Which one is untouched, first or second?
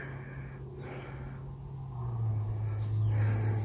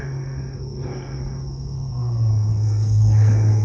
first